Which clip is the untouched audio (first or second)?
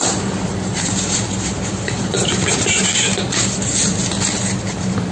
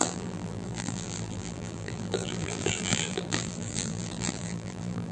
first